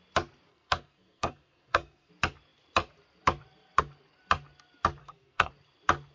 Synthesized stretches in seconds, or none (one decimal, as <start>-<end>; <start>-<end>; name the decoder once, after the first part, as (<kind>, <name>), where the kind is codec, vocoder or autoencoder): 0.5-2.1 (codec, SNAC); 5.0-5.5